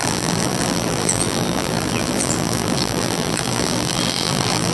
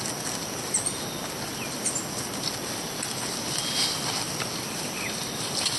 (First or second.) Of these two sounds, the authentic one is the second